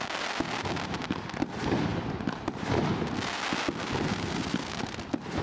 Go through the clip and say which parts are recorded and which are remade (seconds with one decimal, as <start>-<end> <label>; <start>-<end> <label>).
0.0-5.4 recorded